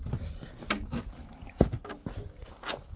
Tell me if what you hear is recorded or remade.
recorded